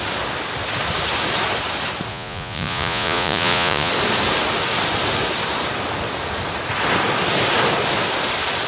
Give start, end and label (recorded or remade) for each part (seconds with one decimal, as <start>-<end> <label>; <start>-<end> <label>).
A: 0.0-2.1 recorded; 2.1-3.9 remade; 3.9-8.7 recorded